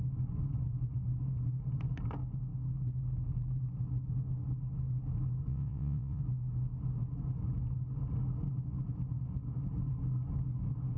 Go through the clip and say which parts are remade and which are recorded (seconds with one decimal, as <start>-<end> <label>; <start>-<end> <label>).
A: 0.0-5.5 recorded; 5.5-6.2 remade; 6.2-11.0 recorded